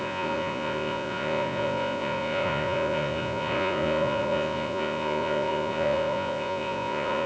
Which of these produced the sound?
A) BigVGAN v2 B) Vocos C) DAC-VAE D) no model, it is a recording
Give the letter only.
B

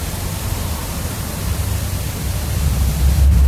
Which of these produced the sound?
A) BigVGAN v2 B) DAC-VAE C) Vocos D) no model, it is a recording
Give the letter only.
A